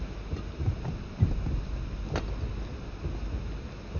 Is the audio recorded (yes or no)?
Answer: yes